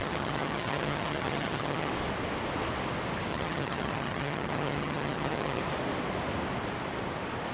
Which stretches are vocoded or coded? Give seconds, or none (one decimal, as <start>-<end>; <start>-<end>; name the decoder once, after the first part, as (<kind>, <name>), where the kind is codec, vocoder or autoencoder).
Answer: 0.0-1.9 (vocoder, HiFi-GAN); 3.3-5.6

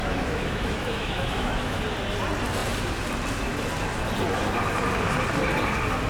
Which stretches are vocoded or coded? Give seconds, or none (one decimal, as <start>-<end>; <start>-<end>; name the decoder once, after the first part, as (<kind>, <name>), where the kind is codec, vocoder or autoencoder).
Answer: 0.0-1.8 (autoencoder, DAC-VAE)

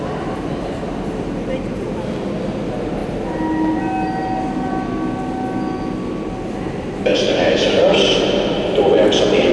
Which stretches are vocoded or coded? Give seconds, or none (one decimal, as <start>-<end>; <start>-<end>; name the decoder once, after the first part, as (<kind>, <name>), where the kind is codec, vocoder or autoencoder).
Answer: none